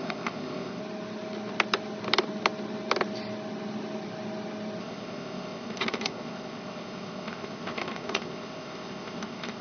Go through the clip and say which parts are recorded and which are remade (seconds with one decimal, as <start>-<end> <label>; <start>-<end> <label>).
0.0-0.8 remade; 0.8-4.8 recorded; 4.8-9.6 remade